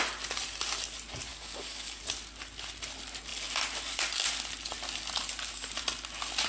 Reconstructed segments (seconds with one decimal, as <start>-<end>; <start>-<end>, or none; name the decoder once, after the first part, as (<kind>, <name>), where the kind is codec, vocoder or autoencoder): 1.3-2.0 (codec, DAC)